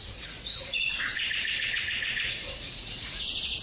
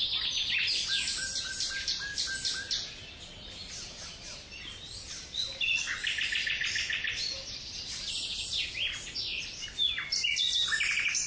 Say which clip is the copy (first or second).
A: first